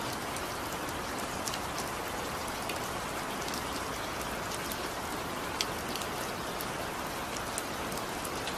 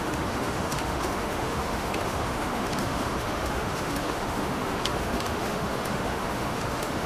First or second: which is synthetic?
second